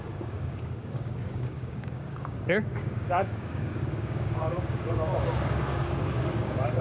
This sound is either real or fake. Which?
fake